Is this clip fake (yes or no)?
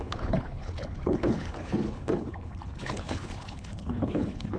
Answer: yes